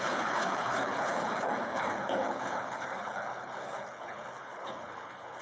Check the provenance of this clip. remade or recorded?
remade